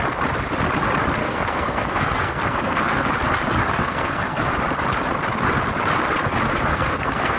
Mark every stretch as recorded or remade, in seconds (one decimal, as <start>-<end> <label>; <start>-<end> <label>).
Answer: 0.0-1.2 recorded; 1.2-3.1 remade; 3.1-3.7 recorded; 3.7-4.5 remade; 4.5-6.7 recorded; 6.7-7.4 remade